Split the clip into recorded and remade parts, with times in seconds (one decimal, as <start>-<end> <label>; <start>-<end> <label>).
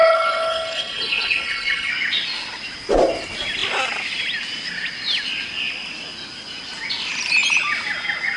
0.0-1.9 remade; 1.9-8.4 recorded